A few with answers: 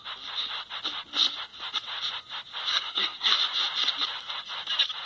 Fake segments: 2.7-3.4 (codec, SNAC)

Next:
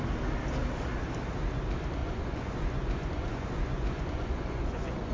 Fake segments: 2.0-5.1 (vocoder, Vocos)

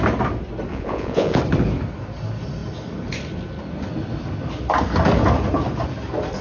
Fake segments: 0.7-1.4 (vocoder, Vocos)

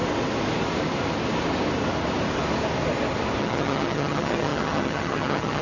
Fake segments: 3.4-5.6 (vocoder, HiFi-GAN)

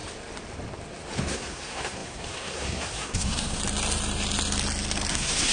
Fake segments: 1.2-3.6 (codec, SNAC); 5.1-5.5

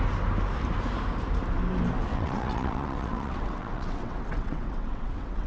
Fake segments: 2.1-5.5 (vocoder, WaveNeXt)

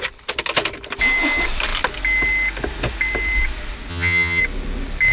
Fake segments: 3.9-4.4 (vocoder, HiFi-GAN)